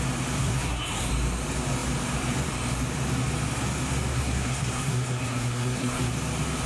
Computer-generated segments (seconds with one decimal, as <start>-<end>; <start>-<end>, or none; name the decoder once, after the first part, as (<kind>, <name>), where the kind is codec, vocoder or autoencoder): 0.4-1.1 (codec, SNAC); 4.1-6.0